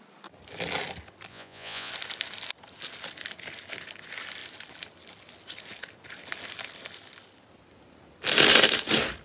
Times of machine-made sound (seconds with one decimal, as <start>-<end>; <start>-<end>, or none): 1.3-1.9